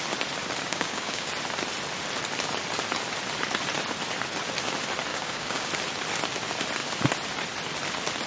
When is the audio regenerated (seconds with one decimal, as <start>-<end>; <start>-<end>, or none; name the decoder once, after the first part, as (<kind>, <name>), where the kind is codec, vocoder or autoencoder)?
0.7-1.3 (codec, DAC); 5.1-5.7